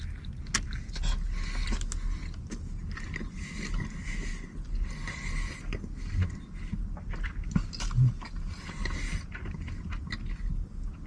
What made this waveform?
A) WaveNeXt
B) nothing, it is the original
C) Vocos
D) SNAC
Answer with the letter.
B